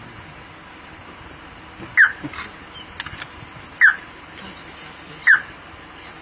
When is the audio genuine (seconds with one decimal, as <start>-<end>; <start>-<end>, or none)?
0.0-6.2